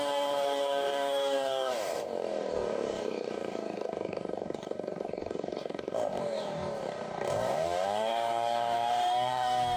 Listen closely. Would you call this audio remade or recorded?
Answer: remade